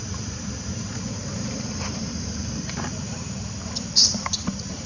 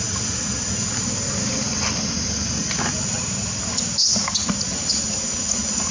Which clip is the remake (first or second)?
first